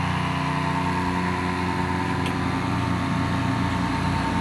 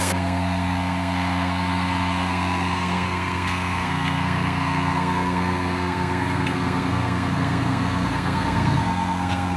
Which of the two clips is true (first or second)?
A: first